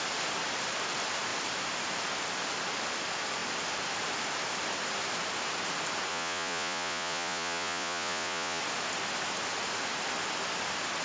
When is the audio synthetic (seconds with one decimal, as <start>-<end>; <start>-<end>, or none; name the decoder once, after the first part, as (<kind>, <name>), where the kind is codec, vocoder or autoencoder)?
6.1-8.6 (vocoder, Vocos)